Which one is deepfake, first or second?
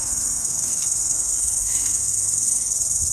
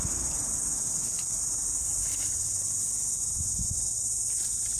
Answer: first